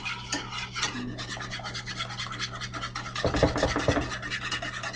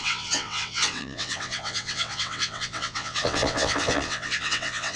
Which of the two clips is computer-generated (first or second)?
second